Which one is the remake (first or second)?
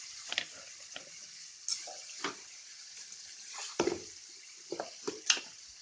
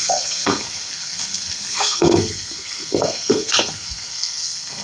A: second